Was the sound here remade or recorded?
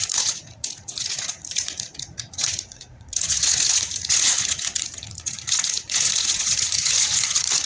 remade